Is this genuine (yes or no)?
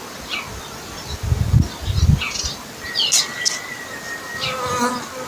yes